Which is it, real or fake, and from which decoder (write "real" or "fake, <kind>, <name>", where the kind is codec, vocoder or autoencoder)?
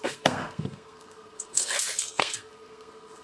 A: fake, codec, SNAC